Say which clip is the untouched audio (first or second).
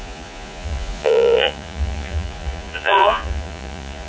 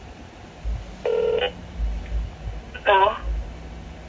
second